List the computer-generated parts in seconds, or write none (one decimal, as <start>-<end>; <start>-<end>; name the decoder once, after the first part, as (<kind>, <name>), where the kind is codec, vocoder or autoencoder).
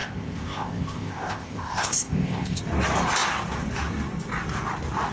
0.0-2.6 (codec, ZipCodec)